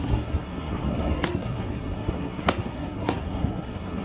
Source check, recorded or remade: remade